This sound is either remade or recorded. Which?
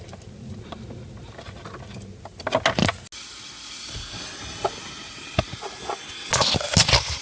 recorded